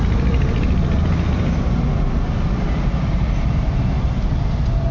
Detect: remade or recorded recorded